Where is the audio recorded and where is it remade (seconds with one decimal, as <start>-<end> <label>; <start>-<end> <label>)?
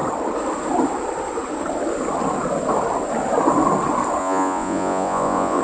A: 0.0-4.2 recorded; 4.2-5.6 remade